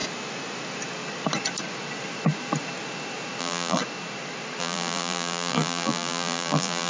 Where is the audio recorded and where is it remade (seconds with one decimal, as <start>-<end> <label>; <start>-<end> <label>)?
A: 0.0-3.4 recorded; 3.4-3.8 remade; 3.8-4.6 recorded; 4.6-6.9 remade